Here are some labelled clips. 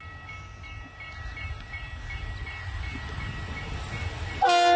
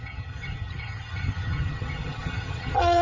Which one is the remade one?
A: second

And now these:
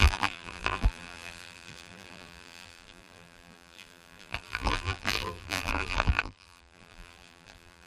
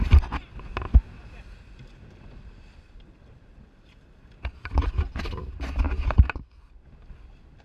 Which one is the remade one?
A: first